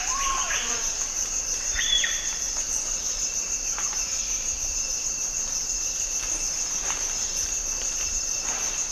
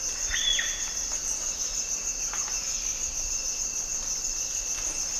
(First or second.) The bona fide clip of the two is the second